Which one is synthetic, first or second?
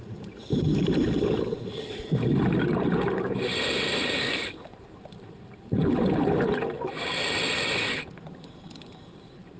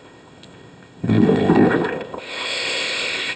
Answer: second